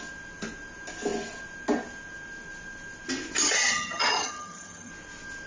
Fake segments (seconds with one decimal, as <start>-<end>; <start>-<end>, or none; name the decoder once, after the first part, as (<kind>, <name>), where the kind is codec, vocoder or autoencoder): 3.4-4.9 (vocoder, HiFi-GAN)